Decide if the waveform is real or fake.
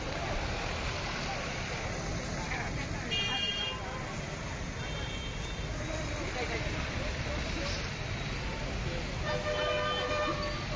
real